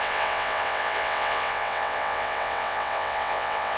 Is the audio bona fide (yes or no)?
no